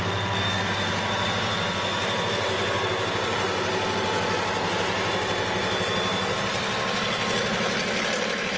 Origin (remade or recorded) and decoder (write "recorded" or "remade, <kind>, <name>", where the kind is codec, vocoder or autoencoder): recorded